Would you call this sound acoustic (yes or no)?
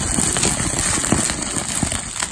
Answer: yes